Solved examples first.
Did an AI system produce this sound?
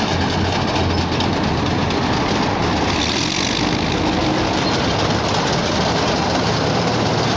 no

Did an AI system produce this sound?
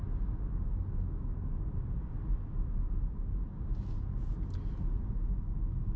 no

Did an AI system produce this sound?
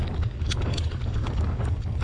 yes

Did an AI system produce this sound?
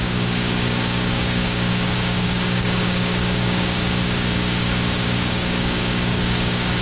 yes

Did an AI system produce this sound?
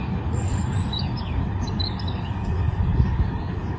yes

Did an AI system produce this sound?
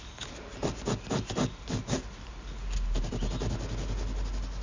no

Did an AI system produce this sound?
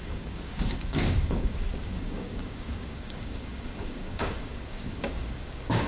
yes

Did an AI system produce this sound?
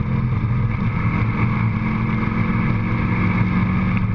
no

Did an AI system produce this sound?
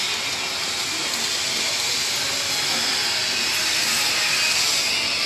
no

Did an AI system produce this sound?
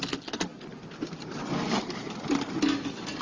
no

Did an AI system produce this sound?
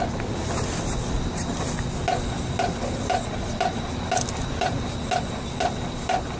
no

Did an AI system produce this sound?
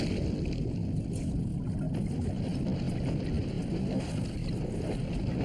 no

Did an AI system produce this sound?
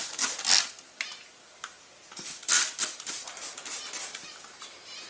no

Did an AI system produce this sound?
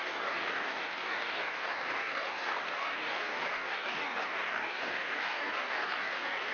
yes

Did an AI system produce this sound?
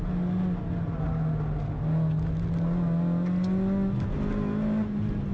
no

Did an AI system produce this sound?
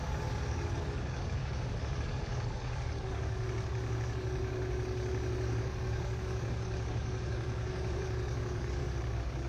yes